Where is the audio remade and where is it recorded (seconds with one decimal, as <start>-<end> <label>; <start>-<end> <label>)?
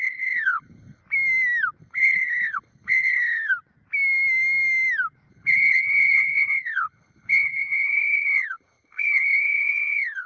0.0-1.0 remade; 1.0-1.8 recorded; 1.8-3.5 remade; 3.5-5.3 recorded; 5.3-10.3 remade